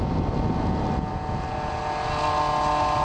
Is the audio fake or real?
real